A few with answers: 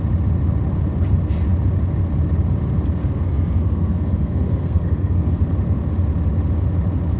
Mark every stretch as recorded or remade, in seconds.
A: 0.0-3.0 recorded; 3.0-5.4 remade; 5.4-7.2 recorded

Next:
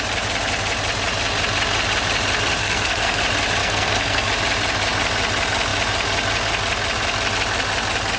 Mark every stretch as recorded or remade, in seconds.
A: 0.0-2.6 recorded; 2.6-3.2 remade; 3.2-3.6 recorded; 3.6-4.3 remade; 4.3-8.2 recorded

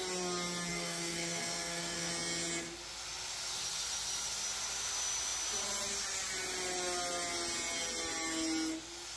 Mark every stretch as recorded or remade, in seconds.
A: 0.0-0.7 recorded; 0.7-2.1 remade; 2.1-9.2 recorded